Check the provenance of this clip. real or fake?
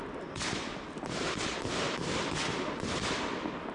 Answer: real